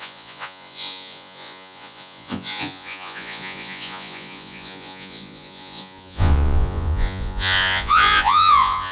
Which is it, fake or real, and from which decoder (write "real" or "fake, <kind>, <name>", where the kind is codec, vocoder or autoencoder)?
fake, vocoder, Vocos